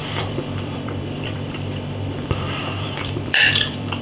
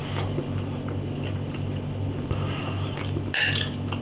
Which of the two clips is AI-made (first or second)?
first